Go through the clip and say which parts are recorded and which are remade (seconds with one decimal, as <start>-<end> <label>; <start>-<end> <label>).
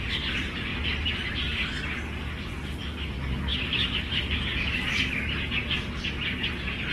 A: 0.0-0.7 recorded; 0.7-1.6 remade; 1.6-3.5 recorded; 3.5-5.2 remade; 5.2-6.9 recorded